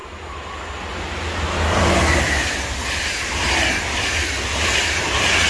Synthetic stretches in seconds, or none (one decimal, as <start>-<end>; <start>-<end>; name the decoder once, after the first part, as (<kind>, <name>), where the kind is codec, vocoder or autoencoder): none